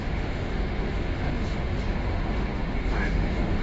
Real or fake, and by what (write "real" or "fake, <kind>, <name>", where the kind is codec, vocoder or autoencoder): fake, autoencoder, DAC-VAE